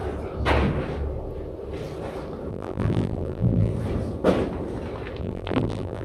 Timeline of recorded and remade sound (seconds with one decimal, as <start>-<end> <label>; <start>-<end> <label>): 0.0-2.5 recorded; 2.5-3.7 remade; 3.7-5.2 recorded; 5.2-6.0 remade